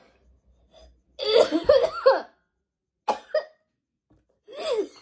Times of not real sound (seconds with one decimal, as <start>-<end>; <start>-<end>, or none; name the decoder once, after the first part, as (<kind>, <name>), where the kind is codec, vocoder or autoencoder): none